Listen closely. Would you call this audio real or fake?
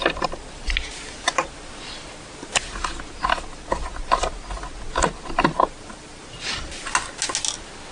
real